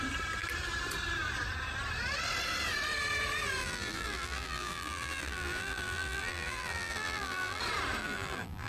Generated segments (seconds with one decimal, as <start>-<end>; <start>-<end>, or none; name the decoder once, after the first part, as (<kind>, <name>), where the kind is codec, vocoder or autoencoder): 3.6-7.6 (vocoder, BigVGAN v2); 8.0-8.7